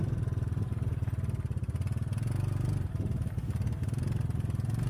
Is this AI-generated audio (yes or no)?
no